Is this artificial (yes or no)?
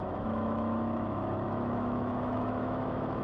yes